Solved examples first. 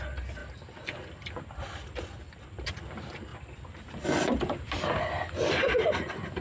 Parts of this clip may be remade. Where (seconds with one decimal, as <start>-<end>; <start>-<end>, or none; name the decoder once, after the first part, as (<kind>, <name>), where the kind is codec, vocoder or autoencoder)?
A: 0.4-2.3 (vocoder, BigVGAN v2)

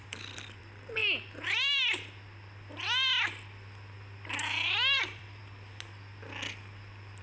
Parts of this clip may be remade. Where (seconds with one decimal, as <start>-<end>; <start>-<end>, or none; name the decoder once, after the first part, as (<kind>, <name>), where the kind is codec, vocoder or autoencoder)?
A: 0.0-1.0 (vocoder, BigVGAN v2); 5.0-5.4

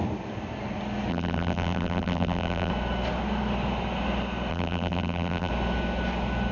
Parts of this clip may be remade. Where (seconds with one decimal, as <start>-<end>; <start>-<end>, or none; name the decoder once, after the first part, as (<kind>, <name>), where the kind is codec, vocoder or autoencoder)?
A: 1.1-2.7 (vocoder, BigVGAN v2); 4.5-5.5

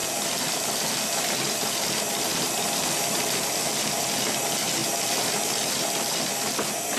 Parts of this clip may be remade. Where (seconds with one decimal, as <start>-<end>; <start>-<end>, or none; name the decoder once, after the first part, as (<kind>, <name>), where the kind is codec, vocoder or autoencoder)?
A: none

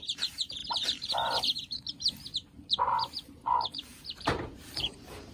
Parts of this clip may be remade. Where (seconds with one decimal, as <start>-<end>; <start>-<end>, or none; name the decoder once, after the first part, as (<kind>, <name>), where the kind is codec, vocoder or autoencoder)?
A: 0.0-5.3 (vocoder, BigVGAN v2)